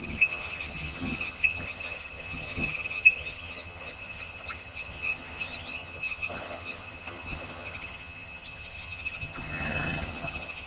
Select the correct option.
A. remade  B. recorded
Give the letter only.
A